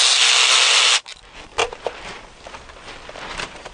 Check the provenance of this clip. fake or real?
real